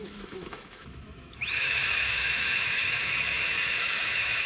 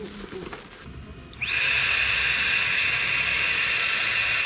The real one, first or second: second